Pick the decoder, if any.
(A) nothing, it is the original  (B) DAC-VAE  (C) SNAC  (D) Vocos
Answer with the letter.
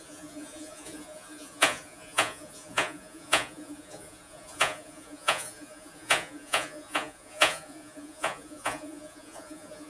D